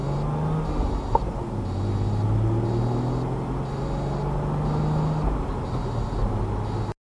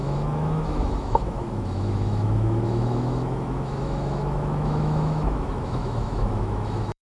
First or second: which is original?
first